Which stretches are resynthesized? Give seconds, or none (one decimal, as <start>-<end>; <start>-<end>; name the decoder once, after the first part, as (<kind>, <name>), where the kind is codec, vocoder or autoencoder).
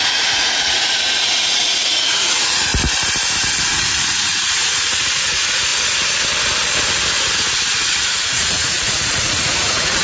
0.0-2.7 (vocoder, Vocos); 3.7-5.7; 7.3-10.0